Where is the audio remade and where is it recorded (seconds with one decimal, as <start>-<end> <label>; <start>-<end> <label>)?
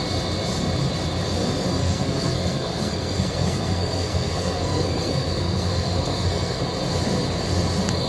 0.0-1.8 recorded; 1.8-6.6 remade; 6.6-8.1 recorded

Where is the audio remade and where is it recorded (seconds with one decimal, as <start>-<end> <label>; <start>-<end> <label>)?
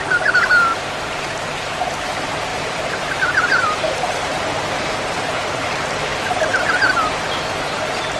0.0-6.1 remade; 6.1-6.7 recorded; 6.7-8.2 remade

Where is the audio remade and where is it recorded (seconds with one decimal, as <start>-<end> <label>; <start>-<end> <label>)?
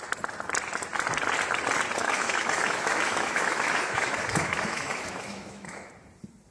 0.0-2.0 recorded; 2.0-5.9 remade; 5.9-6.5 recorded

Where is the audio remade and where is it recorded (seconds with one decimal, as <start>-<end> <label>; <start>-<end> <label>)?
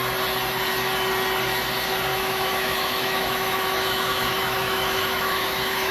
0.0-2.1 recorded; 2.1-5.9 remade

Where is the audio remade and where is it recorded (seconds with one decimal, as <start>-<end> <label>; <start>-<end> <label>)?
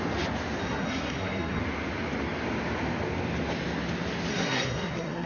0.0-0.6 recorded; 0.6-1.6 remade; 1.6-4.3 recorded; 4.3-5.3 remade